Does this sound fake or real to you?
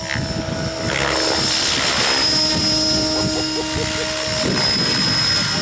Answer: real